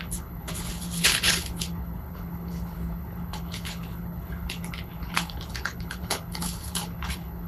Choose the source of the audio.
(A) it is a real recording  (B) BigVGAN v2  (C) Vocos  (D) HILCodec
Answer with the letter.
D